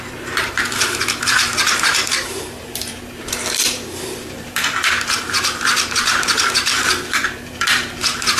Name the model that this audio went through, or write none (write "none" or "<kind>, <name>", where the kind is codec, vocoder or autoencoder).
vocoder, BigVGAN v2